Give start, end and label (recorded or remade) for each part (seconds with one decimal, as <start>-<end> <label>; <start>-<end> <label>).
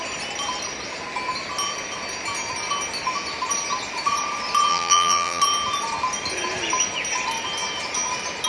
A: 0.0-4.7 recorded; 4.7-5.4 remade; 5.4-8.5 recorded